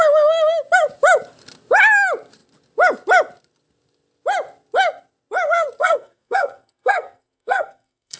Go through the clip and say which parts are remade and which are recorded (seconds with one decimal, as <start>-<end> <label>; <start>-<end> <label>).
0.0-5.8 recorded; 5.8-8.2 remade